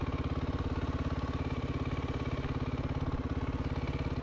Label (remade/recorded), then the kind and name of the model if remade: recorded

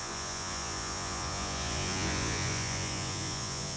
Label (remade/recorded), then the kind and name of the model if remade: remade, vocoder, Vocos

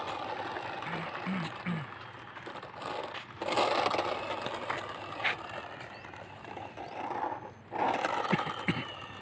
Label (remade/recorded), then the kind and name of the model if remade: recorded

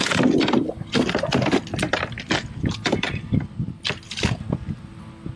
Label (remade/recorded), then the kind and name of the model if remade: recorded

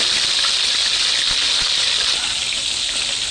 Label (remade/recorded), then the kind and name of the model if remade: recorded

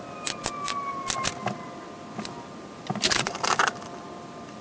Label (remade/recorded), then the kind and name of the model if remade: recorded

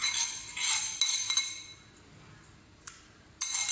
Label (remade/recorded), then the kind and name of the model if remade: recorded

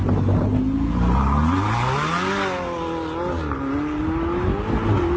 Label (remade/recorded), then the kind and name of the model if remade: recorded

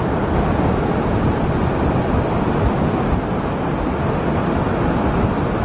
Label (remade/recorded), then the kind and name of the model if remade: recorded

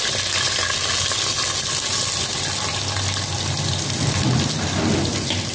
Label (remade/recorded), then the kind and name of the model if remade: recorded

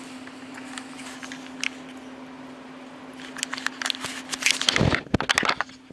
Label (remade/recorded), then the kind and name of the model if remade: recorded